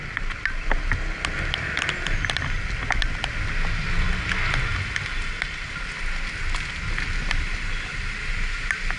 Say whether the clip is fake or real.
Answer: real